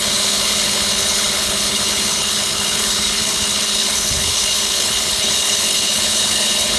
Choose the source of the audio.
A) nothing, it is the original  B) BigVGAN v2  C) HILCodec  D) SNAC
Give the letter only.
C